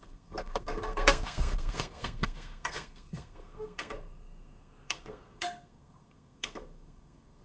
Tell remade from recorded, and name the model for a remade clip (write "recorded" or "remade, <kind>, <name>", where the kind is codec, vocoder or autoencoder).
remade, codec, SNAC